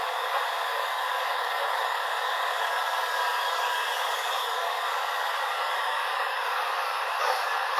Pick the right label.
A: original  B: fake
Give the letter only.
B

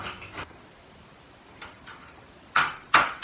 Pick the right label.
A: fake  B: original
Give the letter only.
B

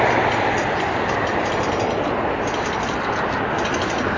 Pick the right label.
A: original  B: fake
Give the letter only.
A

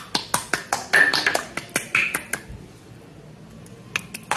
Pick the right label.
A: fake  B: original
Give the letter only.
B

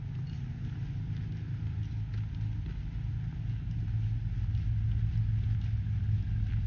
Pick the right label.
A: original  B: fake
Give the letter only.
A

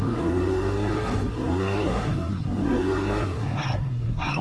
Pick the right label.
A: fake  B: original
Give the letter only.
A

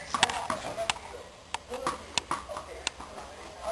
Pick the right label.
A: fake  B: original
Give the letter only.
B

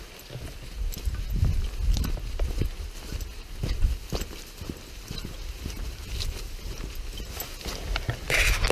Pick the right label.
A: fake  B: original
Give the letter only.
B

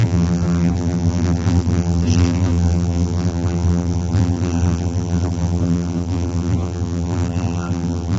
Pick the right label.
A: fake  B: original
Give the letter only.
A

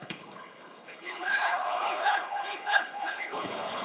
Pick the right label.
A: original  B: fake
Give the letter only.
B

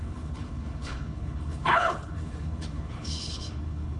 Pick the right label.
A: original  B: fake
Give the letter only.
B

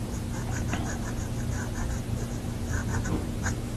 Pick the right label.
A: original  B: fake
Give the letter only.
A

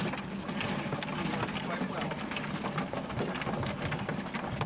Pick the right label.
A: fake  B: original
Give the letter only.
B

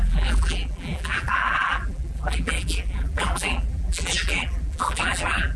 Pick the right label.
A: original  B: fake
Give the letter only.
B